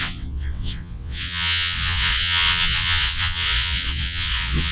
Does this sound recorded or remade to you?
remade